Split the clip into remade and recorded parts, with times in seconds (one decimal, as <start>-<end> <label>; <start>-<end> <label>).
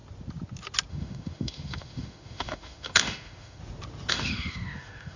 0.0-0.9 recorded; 0.9-3.6 remade; 3.6-4.1 recorded; 4.1-5.2 remade